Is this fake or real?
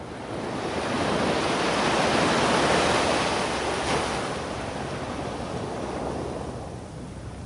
real